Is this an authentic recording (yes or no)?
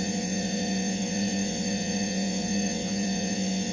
no